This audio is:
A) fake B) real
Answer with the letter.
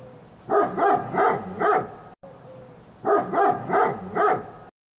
B